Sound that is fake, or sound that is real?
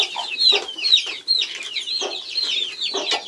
real